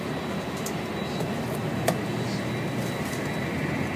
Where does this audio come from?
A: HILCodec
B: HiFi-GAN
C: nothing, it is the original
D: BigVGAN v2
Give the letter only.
C